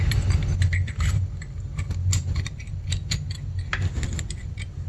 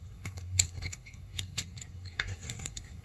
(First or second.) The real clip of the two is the first